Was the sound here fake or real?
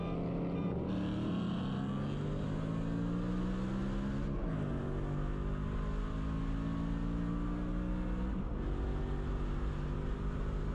real